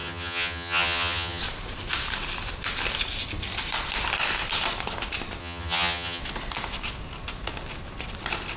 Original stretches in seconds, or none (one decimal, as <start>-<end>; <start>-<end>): 1.4-5.4; 6.2-8.6